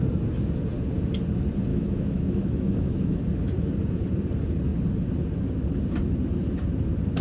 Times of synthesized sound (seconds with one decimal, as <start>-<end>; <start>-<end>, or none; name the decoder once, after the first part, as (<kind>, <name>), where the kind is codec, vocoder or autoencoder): 1.7-3.2 (autoencoder, DAC-VAE)